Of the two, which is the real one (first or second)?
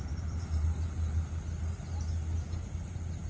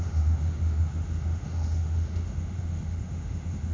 first